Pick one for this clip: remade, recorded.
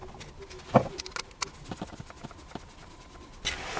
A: recorded